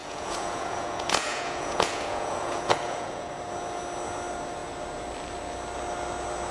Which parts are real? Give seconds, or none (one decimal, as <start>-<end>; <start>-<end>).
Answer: 3.3-6.5